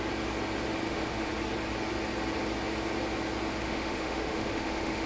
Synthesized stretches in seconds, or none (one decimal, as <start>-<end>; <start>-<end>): 0.8-1.3; 3.6-5.1